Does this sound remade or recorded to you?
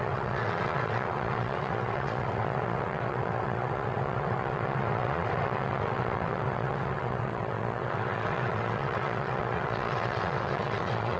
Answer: remade